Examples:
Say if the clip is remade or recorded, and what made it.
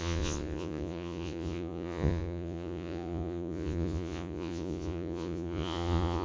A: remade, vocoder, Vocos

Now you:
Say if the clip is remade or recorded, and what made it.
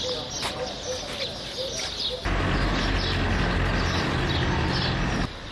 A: recorded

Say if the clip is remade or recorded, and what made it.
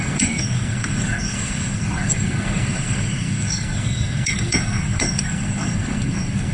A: remade, codec, SNAC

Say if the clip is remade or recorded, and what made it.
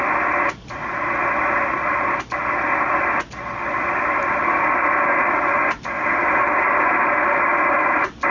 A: remade, vocoder, BigVGAN v2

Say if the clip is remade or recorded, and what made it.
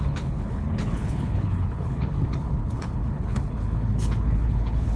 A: remade, codec, HILCodec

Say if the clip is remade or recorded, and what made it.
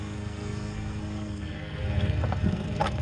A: remade, codec, SNAC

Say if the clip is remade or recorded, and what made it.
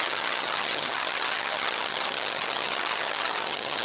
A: remade, vocoder, HiFi-GAN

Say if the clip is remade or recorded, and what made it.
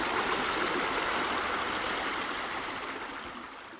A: recorded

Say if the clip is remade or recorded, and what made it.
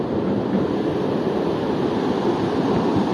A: recorded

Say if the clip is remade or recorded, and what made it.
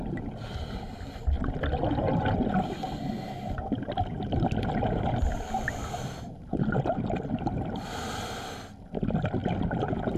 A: recorded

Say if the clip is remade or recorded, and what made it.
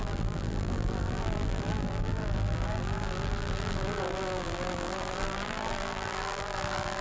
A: remade, vocoder, BigVGAN v2